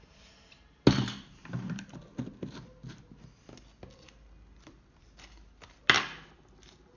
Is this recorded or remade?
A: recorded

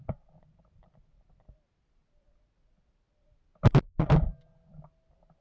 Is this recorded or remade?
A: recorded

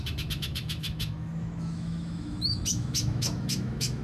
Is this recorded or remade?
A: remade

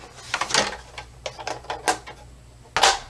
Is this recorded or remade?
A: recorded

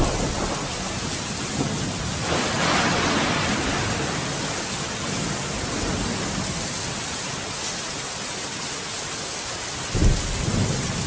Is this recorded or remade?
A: recorded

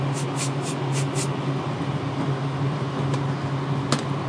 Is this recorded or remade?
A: recorded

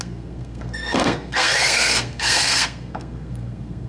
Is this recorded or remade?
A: remade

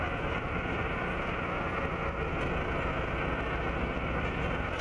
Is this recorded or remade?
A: recorded